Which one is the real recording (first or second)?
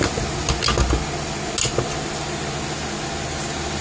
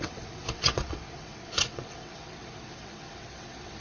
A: first